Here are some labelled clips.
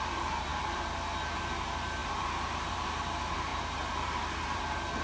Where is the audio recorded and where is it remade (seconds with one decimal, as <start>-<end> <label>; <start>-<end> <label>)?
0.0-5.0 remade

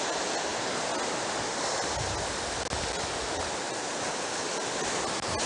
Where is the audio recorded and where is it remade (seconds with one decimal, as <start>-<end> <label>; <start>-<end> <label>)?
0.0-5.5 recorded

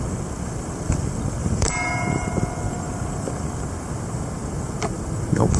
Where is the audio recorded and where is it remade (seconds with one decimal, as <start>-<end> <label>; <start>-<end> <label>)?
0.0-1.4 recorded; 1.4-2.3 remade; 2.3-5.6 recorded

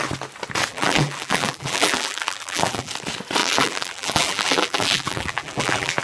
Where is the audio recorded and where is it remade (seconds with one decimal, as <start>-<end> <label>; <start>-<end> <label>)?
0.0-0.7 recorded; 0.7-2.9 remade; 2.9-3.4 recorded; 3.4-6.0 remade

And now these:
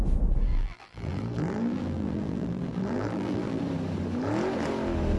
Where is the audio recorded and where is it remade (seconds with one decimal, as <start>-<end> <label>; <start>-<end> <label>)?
0.0-0.5 recorded; 0.5-3.6 remade; 3.6-5.2 recorded

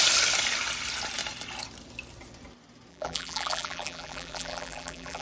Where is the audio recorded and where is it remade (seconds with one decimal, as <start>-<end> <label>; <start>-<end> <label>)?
0.0-2.9 recorded; 2.9-5.2 remade